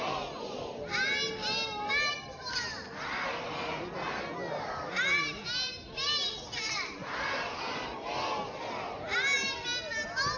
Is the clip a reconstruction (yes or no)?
no